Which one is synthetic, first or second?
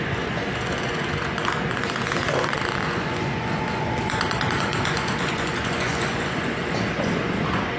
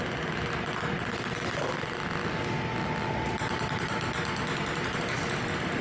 first